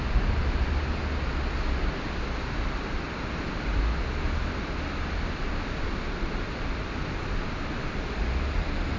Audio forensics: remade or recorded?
recorded